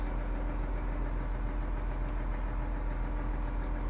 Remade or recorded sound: recorded